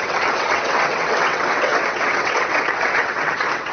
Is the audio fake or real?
fake